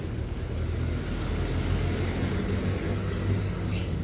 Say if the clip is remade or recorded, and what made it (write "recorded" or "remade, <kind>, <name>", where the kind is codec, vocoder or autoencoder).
remade, codec, DAC